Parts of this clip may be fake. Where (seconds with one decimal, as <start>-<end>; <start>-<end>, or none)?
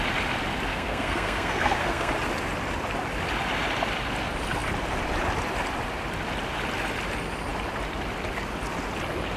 0.7-2.1